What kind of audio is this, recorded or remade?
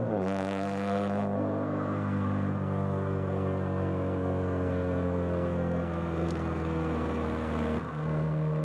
remade